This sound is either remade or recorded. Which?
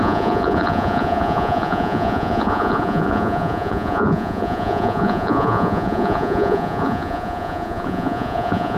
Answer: remade